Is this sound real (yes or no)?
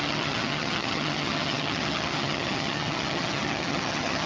no